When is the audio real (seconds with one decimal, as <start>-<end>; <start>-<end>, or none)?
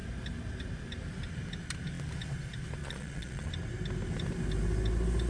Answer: 0.0-2.8; 3.5-5.3